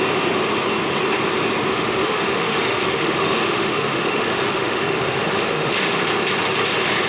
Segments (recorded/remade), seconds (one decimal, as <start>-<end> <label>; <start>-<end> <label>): 0.0-1.7 recorded; 1.7-6.0 remade; 6.0-7.1 recorded

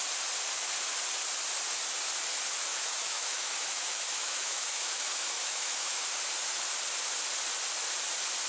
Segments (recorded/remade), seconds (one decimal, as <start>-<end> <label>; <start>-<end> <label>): 0.0-2.7 recorded; 2.7-6.0 remade; 6.0-8.5 recorded

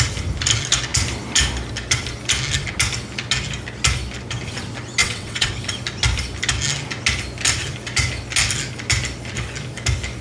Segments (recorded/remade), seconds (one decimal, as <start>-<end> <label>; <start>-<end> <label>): 0.0-5.0 recorded; 5.0-5.5 remade; 5.5-10.2 recorded

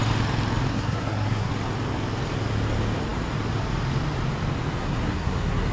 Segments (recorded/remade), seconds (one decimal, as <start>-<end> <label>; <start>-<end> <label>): 0.0-0.7 recorded; 0.7-1.5 remade; 1.5-4.8 recorded; 4.8-5.7 remade

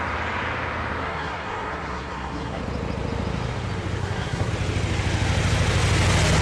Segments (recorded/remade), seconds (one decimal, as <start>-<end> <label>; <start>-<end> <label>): 0.0-1.0 recorded; 1.0-2.6 remade; 2.6-4.0 recorded; 4.0-4.5 remade; 4.5-6.4 recorded

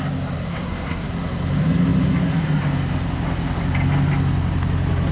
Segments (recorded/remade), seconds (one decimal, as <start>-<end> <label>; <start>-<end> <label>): 0.0-0.5 recorded; 0.5-1.1 remade; 1.1-5.1 recorded

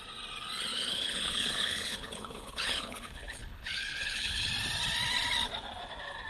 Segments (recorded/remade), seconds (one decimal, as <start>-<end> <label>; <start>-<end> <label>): 0.0-0.7 recorded; 0.7-4.5 remade; 4.5-6.3 recorded

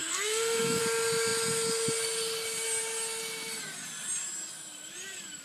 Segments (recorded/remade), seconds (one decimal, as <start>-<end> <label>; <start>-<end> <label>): 0.0-0.8 remade; 0.8-5.4 recorded